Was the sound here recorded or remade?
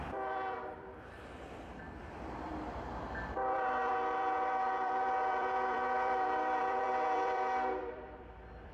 remade